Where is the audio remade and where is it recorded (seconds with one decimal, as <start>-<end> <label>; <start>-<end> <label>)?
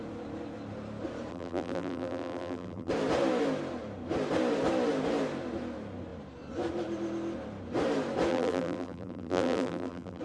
0.0-1.3 recorded; 1.3-2.9 remade; 2.9-8.3 recorded; 8.3-10.2 remade